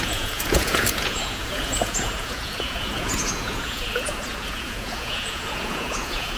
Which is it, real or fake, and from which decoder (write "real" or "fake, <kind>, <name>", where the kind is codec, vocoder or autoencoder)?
fake, vocoder, Vocos